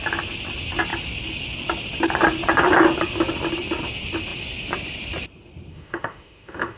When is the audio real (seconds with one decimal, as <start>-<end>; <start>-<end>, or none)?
0.0-5.7

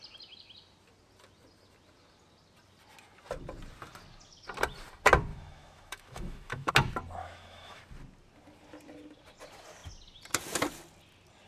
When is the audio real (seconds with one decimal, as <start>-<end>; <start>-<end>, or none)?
0.0-5.3; 6.7-7.2; 7.8-11.5

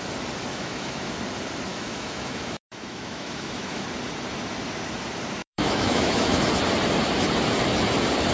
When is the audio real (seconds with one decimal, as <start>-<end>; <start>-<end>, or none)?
0.0-0.5; 1.1-1.7; 3.8-5.4; 6.4-8.3

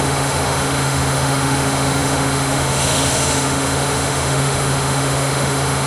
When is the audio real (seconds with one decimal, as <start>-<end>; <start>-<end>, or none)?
none

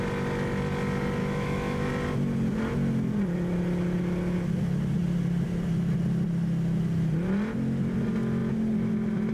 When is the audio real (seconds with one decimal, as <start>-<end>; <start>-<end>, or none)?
0.0-1.2; 1.9-9.3

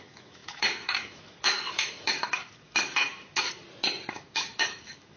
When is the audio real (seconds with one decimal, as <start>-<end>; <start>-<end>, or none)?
3.6-4.1

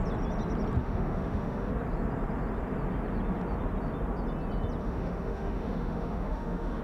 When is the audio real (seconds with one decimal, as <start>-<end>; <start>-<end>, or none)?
0.0-0.8; 1.7-4.8